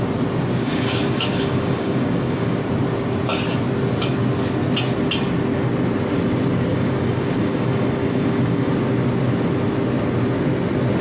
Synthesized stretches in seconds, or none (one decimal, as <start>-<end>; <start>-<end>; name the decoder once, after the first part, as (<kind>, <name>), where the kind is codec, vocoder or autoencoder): 0.6-2.6 (codec, DAC); 6.7-8.7